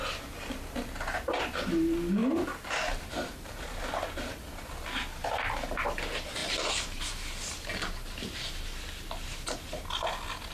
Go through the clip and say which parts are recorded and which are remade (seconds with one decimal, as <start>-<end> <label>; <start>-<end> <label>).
0.0-2.2 recorded; 2.2-3.8 remade; 3.8-6.4 recorded; 6.4-7.0 remade; 7.0-10.5 recorded